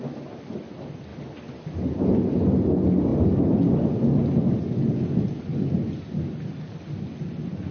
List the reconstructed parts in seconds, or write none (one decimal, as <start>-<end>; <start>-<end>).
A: none